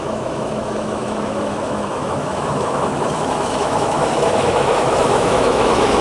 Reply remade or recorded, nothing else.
remade